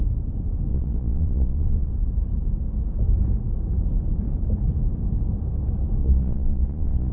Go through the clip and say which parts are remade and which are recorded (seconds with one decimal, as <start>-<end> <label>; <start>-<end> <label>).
0.0-0.7 recorded; 0.7-1.9 remade; 1.9-6.0 recorded; 6.0-7.1 remade